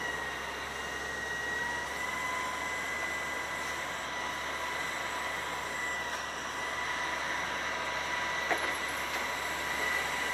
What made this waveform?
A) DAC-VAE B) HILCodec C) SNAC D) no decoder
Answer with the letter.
D